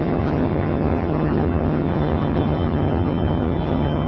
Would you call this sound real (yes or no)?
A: no